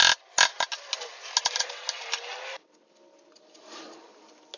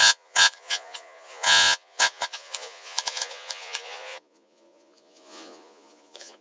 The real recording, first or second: first